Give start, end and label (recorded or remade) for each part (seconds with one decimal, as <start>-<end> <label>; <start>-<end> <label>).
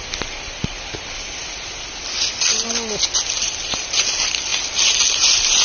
0.0-5.6 recorded